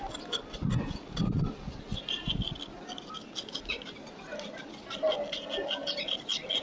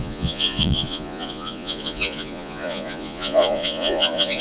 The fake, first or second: second